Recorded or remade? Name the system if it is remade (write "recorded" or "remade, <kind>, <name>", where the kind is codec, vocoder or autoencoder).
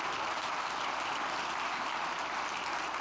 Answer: recorded